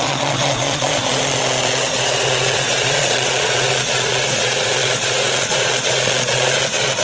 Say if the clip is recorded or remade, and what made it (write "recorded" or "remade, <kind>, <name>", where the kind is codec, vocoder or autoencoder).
remade, vocoder, Vocos